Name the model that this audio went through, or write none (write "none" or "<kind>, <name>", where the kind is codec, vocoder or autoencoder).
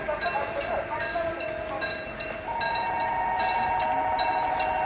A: none